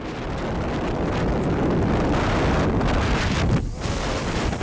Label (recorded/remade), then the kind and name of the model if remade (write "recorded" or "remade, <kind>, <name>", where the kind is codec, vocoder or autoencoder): recorded